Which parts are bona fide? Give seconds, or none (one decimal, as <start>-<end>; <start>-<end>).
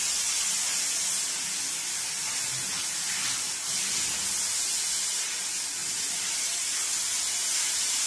0.0-5.8; 6.8-8.1